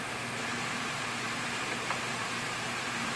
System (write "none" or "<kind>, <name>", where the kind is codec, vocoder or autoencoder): vocoder, BigVGAN v2